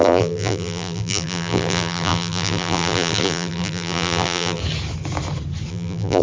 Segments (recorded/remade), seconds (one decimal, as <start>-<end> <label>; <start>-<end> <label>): 0.0-4.6 remade; 4.6-5.7 recorded; 5.7-6.2 remade